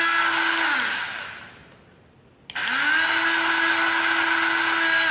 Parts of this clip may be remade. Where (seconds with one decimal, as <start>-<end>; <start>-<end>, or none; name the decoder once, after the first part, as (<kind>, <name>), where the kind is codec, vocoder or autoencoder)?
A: none